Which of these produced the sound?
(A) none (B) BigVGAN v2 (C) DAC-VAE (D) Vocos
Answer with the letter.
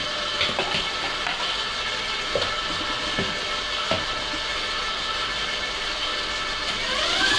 A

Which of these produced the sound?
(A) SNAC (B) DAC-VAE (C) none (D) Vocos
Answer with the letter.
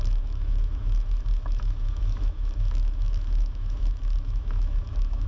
B